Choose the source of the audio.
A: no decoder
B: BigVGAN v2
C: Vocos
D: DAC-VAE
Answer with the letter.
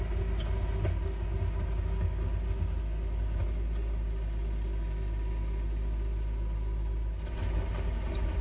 A